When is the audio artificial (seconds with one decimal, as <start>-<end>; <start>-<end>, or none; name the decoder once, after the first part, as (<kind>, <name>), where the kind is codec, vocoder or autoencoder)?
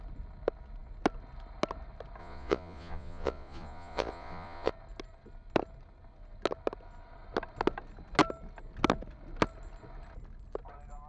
2.2-4.7 (vocoder, Vocos)